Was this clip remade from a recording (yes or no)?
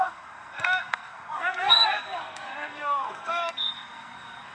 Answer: yes